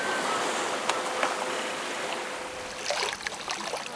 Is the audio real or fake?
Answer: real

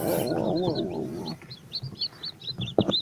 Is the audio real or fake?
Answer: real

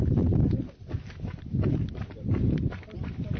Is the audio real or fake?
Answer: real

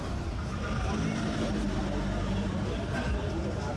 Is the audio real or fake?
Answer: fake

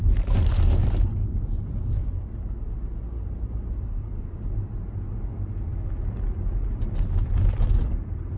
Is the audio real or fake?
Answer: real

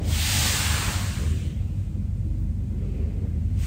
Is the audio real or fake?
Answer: real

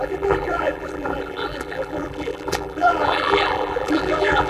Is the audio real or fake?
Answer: fake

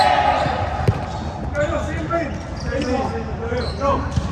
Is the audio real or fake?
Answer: real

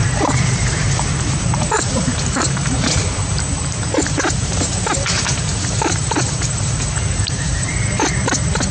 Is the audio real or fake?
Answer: fake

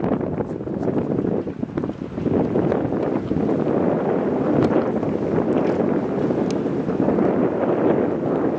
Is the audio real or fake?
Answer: real